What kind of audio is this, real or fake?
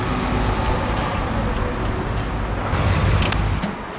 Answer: real